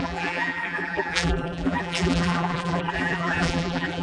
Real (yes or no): no